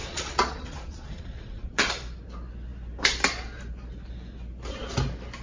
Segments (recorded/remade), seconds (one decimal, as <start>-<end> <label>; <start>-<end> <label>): 0.0-1.9 remade; 1.9-5.4 recorded